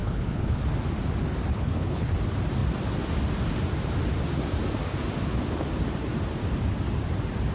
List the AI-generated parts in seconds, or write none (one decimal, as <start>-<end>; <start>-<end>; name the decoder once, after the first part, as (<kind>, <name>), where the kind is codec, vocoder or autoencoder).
0.0-0.6 (codec, HILCodec); 1.5-2.1